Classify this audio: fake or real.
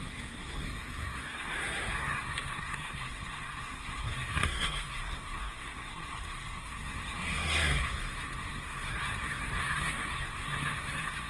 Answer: fake